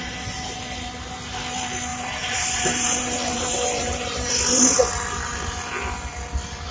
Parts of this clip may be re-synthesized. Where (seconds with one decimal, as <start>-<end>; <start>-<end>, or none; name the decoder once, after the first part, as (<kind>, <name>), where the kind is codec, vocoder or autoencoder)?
1.9-4.3 (vocoder, BigVGAN v2)